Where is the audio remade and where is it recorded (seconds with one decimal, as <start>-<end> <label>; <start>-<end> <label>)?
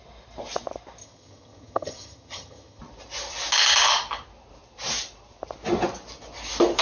0.0-1.0 recorded; 1.0-2.8 remade; 2.8-6.8 recorded